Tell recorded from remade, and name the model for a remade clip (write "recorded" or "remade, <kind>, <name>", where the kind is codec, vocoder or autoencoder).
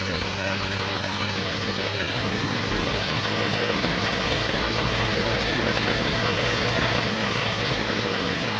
remade, codec, SNAC